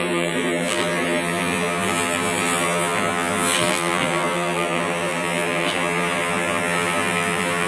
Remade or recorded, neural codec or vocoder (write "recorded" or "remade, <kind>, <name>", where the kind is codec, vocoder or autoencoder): remade, vocoder, BigVGAN v2